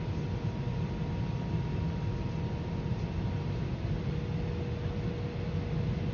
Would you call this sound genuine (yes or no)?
yes